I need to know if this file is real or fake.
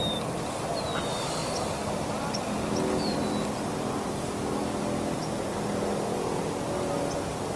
real